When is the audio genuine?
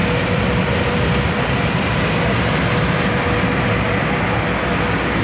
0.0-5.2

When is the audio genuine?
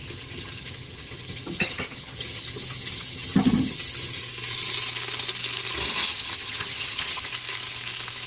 4.2-5.9; 7.3-8.3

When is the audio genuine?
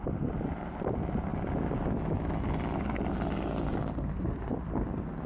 0.0-5.3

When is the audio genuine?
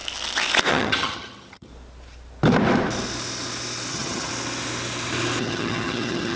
0.0-0.7; 1.7-3.9; 4.3-5.4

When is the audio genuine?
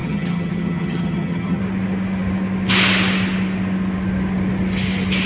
1.6-5.3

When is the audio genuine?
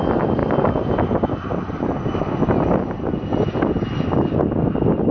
0.0-5.1